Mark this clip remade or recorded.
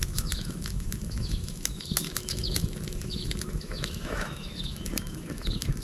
remade